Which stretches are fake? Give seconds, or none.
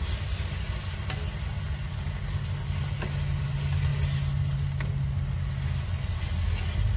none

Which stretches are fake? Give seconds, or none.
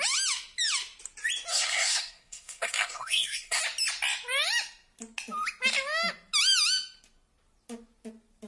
1.5-3.6 (codec, SNAC)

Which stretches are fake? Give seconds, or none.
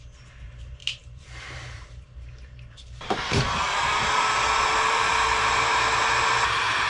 0.0-6.9 (vocoder, BigVGAN v2)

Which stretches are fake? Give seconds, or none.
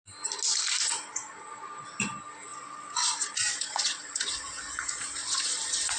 2.5-6.0 (vocoder, Vocos)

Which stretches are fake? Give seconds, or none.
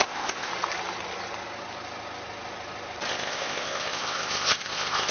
0.0-0.5 (codec, ZipCodec); 3.1-5.1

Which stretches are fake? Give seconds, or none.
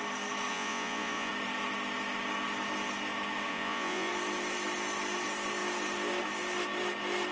0.5-1.3 (vocoder, Vocos); 3.5-4.1